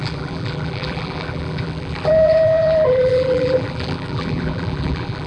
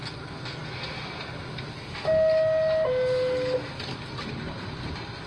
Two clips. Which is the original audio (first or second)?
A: second